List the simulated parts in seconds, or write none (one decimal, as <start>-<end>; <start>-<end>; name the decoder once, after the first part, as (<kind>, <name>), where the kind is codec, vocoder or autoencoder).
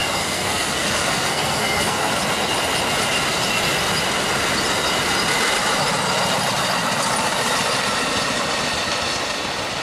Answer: 0.0-2.1 (codec, SNAC)